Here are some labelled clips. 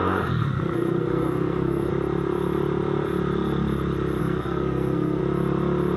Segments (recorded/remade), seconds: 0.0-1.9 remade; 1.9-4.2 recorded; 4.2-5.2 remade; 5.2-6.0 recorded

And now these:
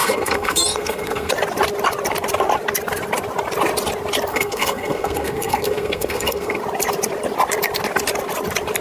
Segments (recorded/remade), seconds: 0.0-1.3 remade; 1.3-4.3 recorded; 4.3-6.6 remade; 6.6-8.8 recorded

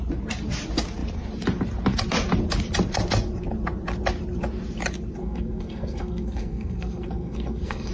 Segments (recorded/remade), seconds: 0.0-5.2 recorded; 5.2-7.9 remade

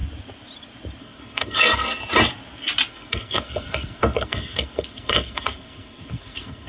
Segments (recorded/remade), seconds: 0.0-1.0 recorded; 1.0-2.0 remade; 2.0-2.9 recorded; 2.9-6.7 remade

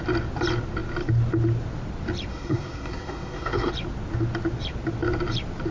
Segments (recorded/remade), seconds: 0.0-2.3 recorded; 2.3-3.7 remade; 3.7-5.7 recorded